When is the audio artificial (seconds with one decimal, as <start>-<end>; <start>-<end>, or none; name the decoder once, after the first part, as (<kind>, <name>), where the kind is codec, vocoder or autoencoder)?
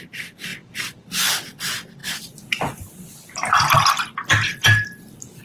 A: 0.0-5.4 (vocoder, BigVGAN v2)